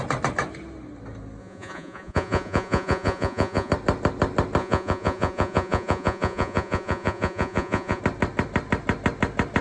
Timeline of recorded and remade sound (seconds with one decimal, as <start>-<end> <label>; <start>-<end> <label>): 0.0-1.4 recorded; 1.4-3.7 remade; 3.7-4.6 recorded; 4.6-8.0 remade; 8.0-9.6 recorded